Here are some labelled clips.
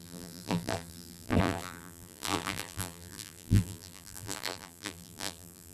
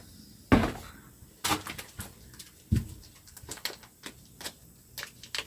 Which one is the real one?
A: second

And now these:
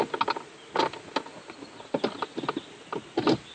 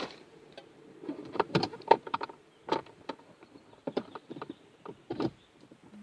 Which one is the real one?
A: first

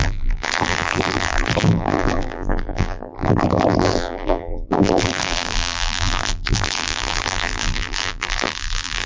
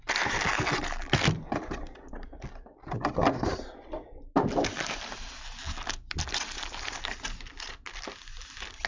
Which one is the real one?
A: second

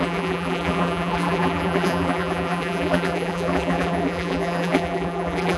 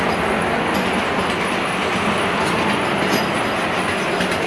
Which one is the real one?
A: second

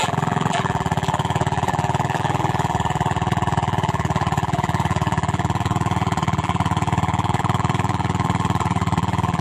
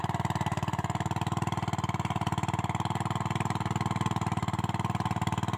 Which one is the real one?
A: second